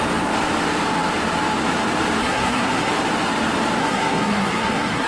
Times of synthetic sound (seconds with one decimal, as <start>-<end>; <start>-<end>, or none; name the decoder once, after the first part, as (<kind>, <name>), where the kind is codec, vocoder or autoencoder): 2.2-2.9 (codec, SNAC); 3.8-5.1